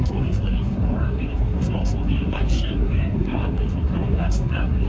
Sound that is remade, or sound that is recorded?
remade